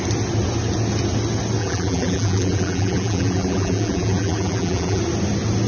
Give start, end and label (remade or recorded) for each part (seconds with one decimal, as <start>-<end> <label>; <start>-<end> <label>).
0.0-1.6 recorded; 1.6-5.0 remade; 5.0-5.7 recorded